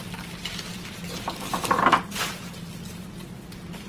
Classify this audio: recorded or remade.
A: recorded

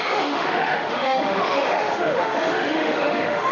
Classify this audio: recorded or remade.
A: remade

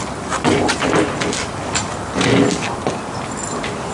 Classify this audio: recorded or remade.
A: recorded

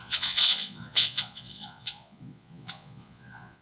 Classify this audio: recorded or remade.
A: remade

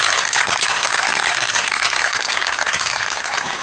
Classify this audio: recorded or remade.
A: remade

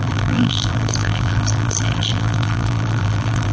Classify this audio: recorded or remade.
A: remade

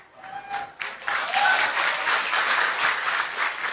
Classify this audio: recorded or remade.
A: recorded